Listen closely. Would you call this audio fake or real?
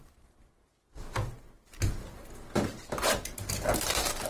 real